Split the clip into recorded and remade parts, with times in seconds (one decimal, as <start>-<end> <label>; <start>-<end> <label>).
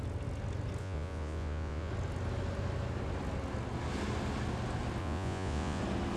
0.0-0.8 recorded; 0.8-1.9 remade; 1.9-5.0 recorded; 5.0-5.8 remade; 5.8-6.2 recorded